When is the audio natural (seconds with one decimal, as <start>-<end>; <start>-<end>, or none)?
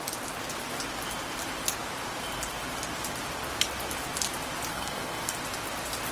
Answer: 0.0-4.7; 5.3-6.1